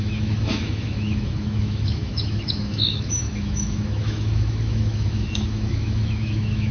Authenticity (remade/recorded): remade